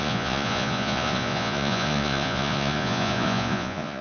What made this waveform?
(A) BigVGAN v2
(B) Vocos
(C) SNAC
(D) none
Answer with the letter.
B